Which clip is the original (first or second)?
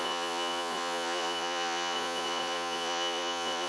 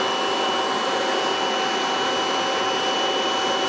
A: second